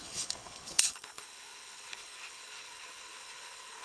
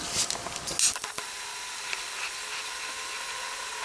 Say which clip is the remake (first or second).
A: first